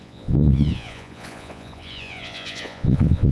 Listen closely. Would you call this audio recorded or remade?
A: remade